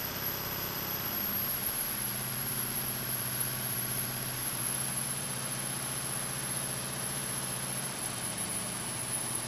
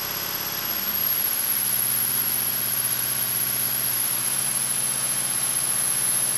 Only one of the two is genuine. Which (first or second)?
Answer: second